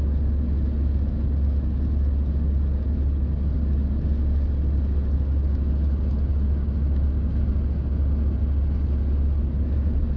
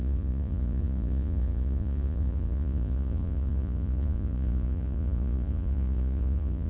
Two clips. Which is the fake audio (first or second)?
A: second